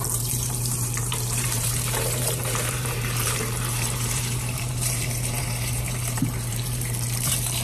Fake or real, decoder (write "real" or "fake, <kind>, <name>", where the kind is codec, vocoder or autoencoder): fake, vocoder, BigVGAN v2